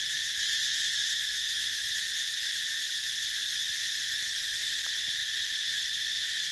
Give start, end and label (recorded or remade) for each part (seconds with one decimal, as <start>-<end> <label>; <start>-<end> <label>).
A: 0.0-1.0 recorded; 1.0-1.8 remade; 1.8-6.5 recorded